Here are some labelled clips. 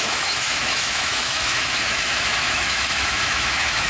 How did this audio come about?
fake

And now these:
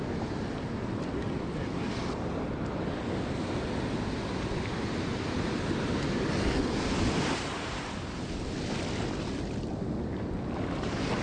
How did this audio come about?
real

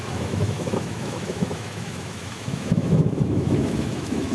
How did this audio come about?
fake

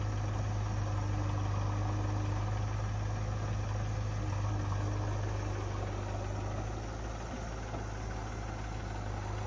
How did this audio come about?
real